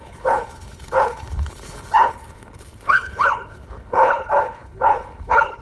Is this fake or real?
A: fake